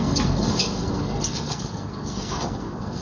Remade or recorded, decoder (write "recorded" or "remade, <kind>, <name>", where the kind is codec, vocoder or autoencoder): remade, codec, SNAC